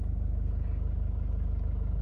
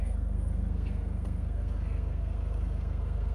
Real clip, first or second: first